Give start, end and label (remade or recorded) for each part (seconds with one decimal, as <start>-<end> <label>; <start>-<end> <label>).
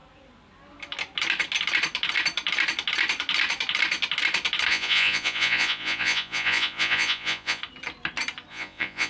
0.0-4.7 recorded; 4.7-7.6 remade; 7.6-8.5 recorded; 8.5-9.1 remade